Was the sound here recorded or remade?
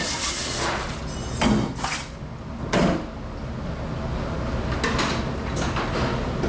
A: recorded